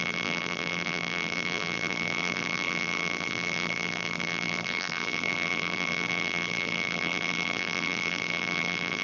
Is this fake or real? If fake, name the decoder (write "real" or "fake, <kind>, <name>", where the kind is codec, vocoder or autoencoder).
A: fake, vocoder, BigVGAN v2